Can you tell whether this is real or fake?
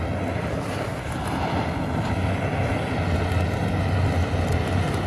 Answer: real